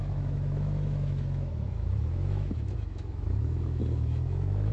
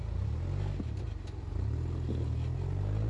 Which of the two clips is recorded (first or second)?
second